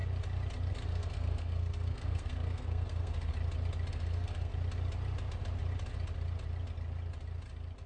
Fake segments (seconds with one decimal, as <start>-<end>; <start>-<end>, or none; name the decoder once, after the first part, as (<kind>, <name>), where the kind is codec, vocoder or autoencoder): 0.7-3.3 (codec, SNAC); 3.9-4.5